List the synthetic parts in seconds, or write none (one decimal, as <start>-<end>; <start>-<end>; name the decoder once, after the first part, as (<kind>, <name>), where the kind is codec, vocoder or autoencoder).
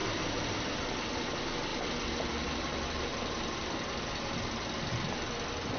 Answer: 0.0-0.7 (vocoder, BigVGAN v2); 1.7-2.2